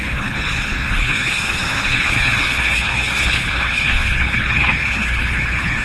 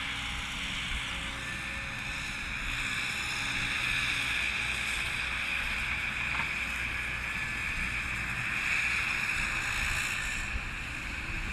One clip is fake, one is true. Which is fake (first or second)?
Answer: first